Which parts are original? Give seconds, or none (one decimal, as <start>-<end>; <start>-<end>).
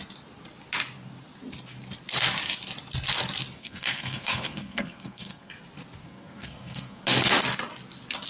0.0-3.6; 5.5-6.0; 7.0-8.3